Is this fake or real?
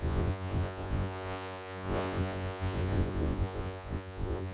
fake